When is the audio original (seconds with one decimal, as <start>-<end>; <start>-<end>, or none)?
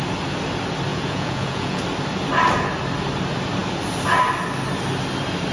0.0-0.9; 1.8-5.5